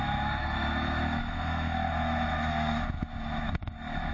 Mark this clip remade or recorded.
remade